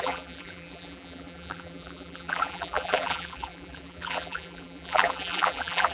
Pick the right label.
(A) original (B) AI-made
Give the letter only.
B